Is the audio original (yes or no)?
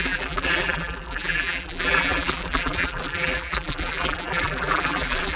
no